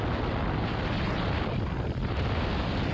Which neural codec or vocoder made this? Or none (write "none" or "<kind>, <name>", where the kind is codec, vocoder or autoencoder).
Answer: none